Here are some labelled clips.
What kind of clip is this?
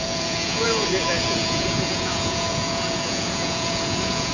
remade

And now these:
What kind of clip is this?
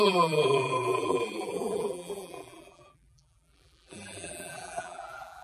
remade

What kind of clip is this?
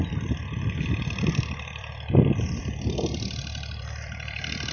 remade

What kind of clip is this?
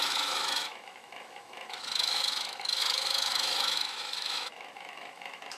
remade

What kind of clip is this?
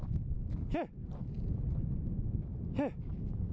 recorded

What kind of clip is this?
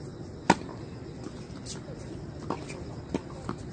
recorded